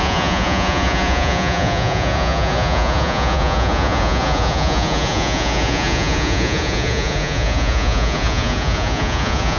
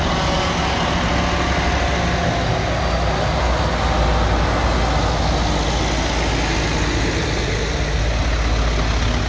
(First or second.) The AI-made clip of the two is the first